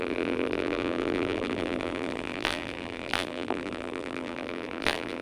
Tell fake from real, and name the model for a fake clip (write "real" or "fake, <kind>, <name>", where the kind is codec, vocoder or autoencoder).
fake, vocoder, BigVGAN v2